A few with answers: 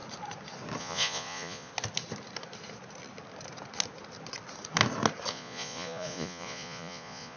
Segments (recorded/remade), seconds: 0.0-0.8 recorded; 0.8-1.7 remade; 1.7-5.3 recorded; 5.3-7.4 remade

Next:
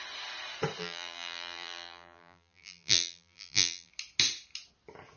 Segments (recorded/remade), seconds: 0.0-0.8 recorded; 0.8-3.9 remade; 3.9-5.2 recorded